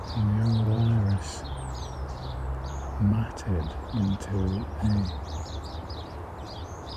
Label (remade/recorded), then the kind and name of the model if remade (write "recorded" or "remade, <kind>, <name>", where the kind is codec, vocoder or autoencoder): remade, vocoder, BigVGAN v2